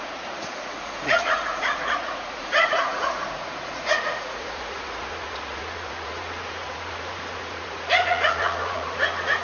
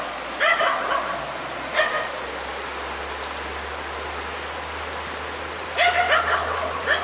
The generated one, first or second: first